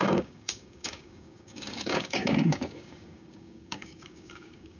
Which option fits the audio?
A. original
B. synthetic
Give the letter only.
B